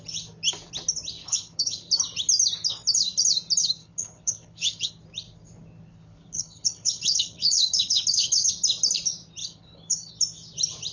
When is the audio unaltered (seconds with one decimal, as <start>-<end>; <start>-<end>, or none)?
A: 0.0-1.2; 1.9-3.8; 4.9-5.9; 8.5-9.4; 10.1-10.9